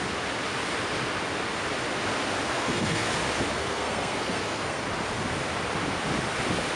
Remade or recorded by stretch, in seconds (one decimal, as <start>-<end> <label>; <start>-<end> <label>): 0.0-2.5 recorded; 2.5-3.1 remade; 3.1-3.6 recorded; 3.6-4.8 remade; 4.8-6.8 recorded